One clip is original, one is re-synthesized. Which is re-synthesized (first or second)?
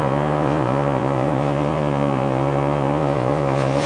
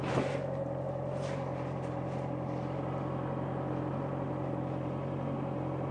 first